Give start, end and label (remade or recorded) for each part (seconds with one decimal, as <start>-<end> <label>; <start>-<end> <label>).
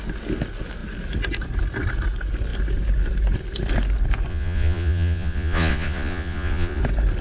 0.0-4.3 recorded; 4.3-6.8 remade; 6.8-7.2 recorded